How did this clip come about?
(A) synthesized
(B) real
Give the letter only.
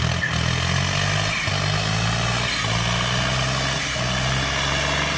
B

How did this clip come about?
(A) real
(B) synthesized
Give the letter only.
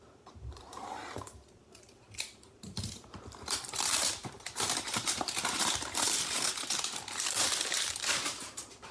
B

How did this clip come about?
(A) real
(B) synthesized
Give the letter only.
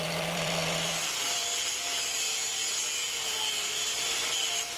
B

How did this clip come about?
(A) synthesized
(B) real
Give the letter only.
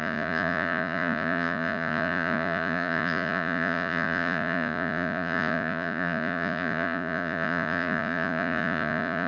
A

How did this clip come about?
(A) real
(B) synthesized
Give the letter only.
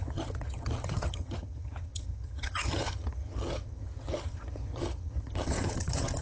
B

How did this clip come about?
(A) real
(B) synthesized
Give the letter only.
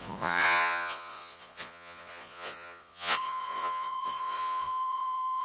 B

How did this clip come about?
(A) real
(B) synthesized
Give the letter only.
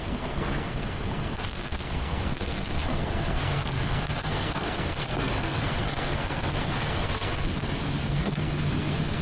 B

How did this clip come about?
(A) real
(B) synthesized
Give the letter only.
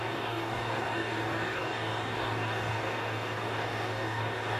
B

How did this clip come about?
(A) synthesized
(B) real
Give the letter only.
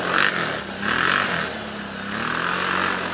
B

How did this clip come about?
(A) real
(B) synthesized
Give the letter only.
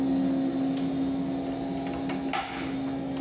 A